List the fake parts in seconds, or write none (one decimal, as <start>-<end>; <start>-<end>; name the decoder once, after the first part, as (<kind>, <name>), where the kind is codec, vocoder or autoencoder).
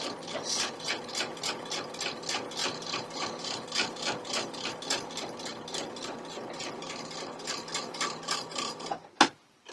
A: none